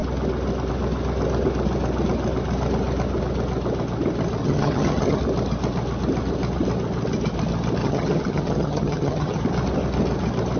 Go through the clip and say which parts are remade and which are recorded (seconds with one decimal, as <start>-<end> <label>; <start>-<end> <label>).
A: 0.0-4.4 recorded; 4.4-5.2 remade; 5.2-7.8 recorded; 7.8-9.4 remade; 9.4-10.6 recorded